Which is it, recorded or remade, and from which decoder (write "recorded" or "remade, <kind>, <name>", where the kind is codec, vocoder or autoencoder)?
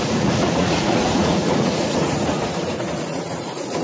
remade, vocoder, Vocos